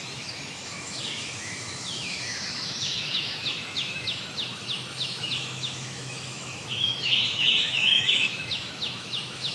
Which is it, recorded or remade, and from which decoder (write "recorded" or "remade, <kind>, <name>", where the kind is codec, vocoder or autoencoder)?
remade, autoencoder, DAC-VAE